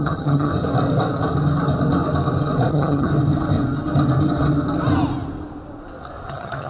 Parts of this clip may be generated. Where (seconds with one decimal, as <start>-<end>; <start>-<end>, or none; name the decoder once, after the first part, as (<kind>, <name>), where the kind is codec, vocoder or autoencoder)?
0.0-0.5 (vocoder, HiFi-GAN); 2.7-3.1; 6.3-6.7